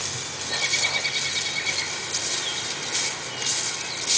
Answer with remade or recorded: recorded